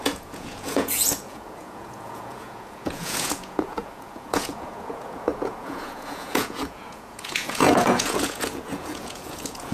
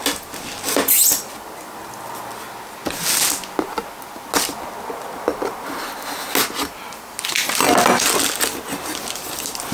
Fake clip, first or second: first